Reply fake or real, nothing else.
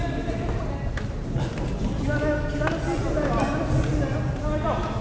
real